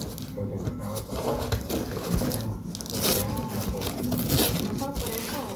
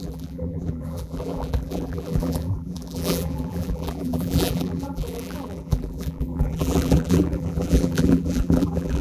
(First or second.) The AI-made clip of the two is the second